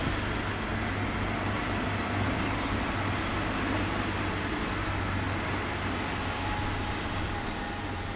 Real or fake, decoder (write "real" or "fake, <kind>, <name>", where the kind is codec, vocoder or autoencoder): real